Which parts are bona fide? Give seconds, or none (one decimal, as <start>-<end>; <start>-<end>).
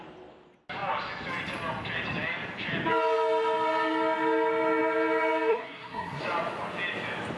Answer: 0.0-5.5; 6.2-7.4